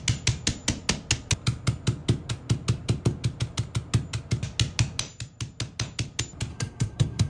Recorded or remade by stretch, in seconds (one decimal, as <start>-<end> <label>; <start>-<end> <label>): 0.0-6.5 recorded; 6.5-7.3 remade